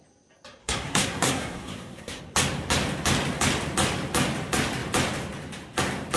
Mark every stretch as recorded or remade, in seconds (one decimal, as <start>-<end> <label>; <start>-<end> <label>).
0.0-0.6 recorded; 0.6-2.2 remade; 2.2-6.2 recorded

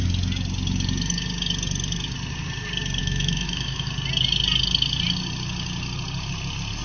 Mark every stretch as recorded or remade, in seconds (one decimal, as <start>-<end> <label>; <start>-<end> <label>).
0.0-3.0 recorded; 3.0-3.9 remade; 3.9-6.8 recorded